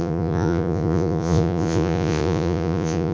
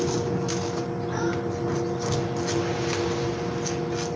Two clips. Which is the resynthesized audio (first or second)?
first